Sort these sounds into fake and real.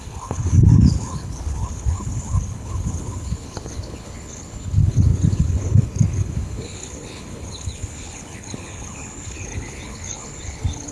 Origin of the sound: fake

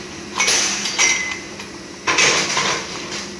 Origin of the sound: fake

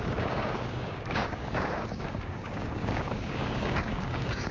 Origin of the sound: fake